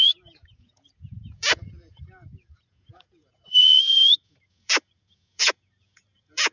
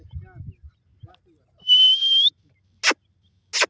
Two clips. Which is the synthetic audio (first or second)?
first